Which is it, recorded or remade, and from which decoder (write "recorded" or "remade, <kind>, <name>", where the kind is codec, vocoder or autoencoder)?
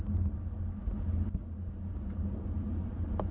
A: recorded